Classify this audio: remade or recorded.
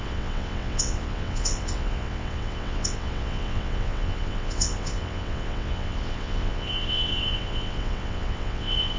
remade